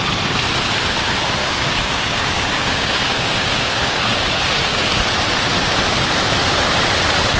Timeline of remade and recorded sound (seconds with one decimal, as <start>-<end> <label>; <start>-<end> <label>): 0.0-1.4 recorded; 1.4-4.8 remade; 4.8-7.4 recorded